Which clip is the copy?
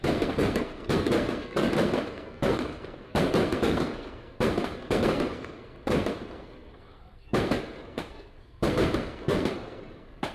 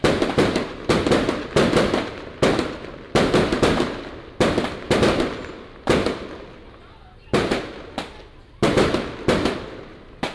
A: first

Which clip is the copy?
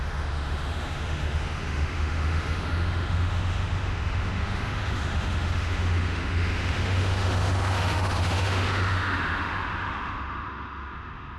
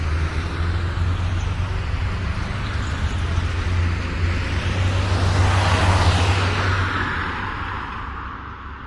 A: first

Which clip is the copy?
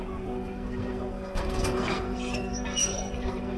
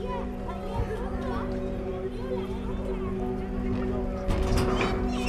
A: first